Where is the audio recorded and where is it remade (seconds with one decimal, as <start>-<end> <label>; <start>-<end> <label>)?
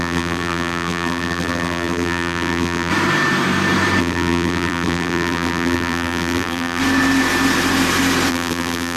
0.0-2.9 remade; 2.9-4.0 recorded; 4.0-6.8 remade; 6.8-8.3 recorded; 8.3-9.0 remade